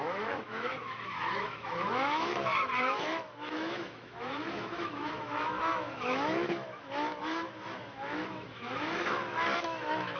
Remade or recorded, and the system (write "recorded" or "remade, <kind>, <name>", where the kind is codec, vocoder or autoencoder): remade, autoencoder, DAC-VAE